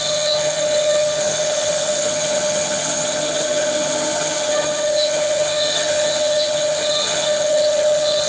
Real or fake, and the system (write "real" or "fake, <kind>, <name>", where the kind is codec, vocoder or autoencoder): fake, vocoder, HiFi-GAN